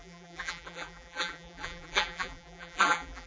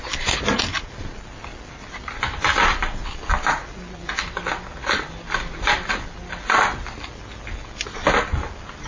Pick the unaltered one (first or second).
second